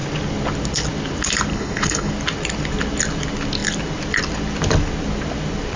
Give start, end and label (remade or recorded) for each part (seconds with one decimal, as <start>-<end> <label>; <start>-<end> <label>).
0.0-1.5 recorded; 1.5-2.1 remade; 2.1-5.8 recorded